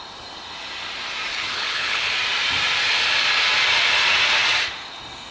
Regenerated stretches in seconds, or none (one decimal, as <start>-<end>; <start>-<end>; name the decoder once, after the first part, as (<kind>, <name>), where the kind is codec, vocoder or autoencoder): 1.3-2.1 (codec, HILCodec)